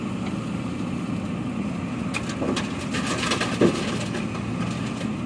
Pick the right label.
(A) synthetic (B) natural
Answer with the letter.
B